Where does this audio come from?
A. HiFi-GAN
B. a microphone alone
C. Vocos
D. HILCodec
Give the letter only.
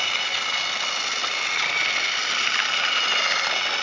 B